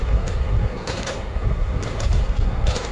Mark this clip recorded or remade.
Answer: remade